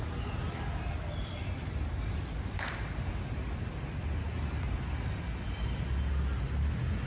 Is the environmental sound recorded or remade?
recorded